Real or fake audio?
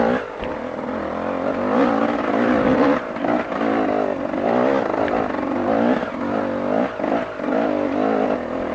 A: real